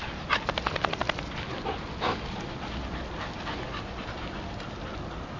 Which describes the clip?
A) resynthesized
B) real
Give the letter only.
B